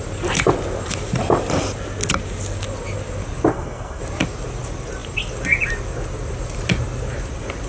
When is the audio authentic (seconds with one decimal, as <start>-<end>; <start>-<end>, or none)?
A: 0.0-3.5; 4.0-7.7